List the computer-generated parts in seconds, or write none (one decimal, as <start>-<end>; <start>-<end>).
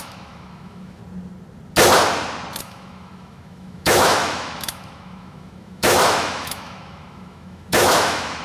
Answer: 0.0-1.0; 2.6-8.4